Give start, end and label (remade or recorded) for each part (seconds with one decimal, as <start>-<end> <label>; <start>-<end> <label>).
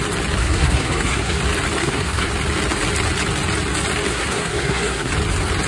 0.0-0.4 recorded; 0.4-1.4 remade; 1.4-1.8 recorded; 1.8-2.3 remade; 2.3-4.1 recorded; 4.1-5.1 remade; 5.1-5.7 recorded